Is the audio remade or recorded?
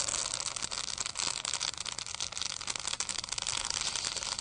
recorded